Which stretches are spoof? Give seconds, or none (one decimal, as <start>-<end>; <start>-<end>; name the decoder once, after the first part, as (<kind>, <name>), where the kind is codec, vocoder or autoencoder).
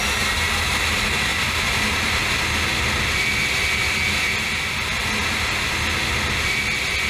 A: none